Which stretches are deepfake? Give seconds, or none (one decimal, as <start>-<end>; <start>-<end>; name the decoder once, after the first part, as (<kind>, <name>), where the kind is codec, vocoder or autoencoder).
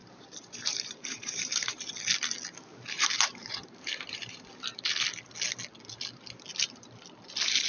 0.0-1.9 (vocoder, BigVGAN v2); 2.7-4.4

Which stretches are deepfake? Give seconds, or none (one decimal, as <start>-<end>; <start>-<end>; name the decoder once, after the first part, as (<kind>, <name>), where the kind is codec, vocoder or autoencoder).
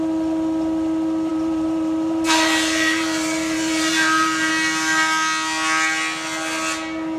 1.3-4.5 (vocoder, BigVGAN v2)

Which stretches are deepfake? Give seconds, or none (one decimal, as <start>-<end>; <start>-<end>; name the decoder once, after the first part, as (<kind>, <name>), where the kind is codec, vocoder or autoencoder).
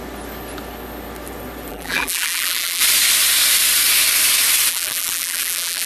1.7-2.8 (vocoder, BigVGAN v2); 4.7-5.9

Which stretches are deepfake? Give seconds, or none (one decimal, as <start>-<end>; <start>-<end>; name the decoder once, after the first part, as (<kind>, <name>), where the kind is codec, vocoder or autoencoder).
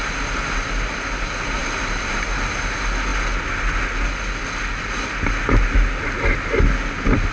1.6-2.2 (vocoder, BigVGAN v2)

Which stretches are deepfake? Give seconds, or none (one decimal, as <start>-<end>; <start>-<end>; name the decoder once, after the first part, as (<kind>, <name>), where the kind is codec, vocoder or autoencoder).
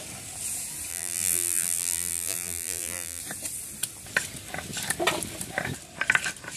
0.9-3.2 (vocoder, BigVGAN v2)